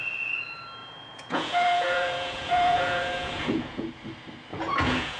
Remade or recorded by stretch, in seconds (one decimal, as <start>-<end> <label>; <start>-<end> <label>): 0.0-0.8 recorded; 0.8-3.9 remade; 3.9-4.5 recorded; 4.5-5.2 remade